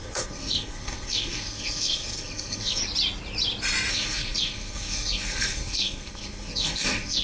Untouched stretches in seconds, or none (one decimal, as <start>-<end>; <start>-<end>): 2.8-3.9